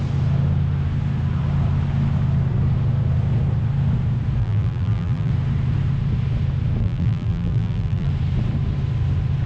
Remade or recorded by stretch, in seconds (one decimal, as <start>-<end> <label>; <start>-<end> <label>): 0.0-4.4 recorded; 4.4-5.3 remade; 5.3-6.8 recorded; 6.8-8.1 remade; 8.1-9.5 recorded